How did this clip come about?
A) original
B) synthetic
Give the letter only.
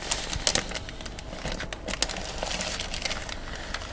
A